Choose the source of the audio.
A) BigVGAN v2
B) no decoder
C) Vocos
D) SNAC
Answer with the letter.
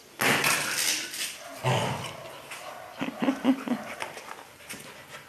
B